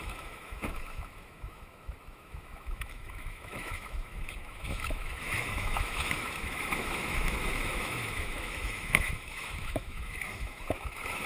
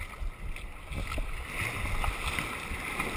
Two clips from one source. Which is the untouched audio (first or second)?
second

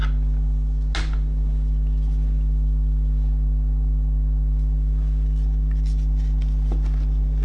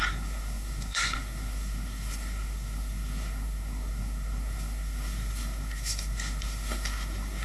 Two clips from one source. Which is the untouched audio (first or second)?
first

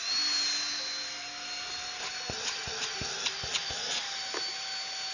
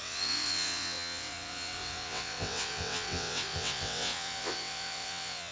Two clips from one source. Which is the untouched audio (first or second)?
first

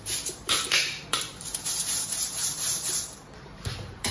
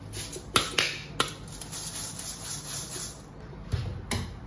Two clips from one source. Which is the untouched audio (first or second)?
second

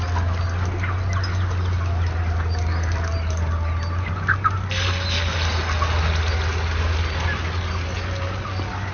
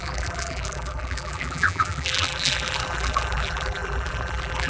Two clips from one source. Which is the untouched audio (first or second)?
first